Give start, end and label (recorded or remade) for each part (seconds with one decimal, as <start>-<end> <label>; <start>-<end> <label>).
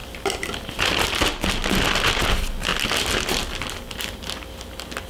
0.0-1.2 remade; 1.2-5.1 recorded